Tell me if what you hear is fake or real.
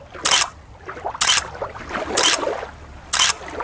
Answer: real